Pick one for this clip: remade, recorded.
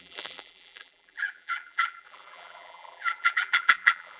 remade